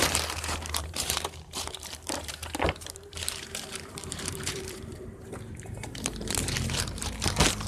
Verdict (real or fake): fake